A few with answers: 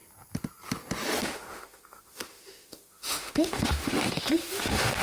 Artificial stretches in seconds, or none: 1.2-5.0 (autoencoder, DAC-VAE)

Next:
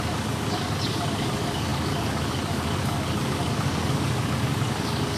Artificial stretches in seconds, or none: 0.0-5.2 (codec, DAC)